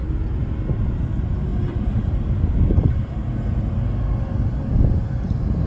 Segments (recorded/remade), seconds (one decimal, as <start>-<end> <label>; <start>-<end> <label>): 0.0-1.5 recorded; 1.5-3.1 remade; 3.1-5.7 recorded